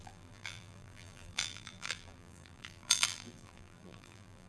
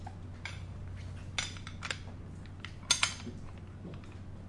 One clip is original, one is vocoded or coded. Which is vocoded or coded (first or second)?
first